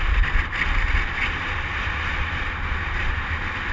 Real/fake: real